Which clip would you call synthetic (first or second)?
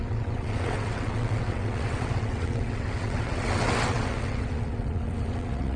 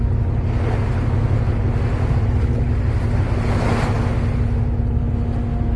first